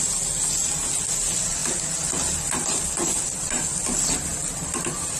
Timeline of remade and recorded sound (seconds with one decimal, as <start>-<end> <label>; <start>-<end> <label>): 0.0-5.2 recorded